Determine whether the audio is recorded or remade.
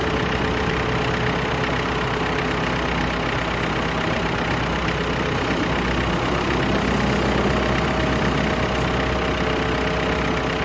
recorded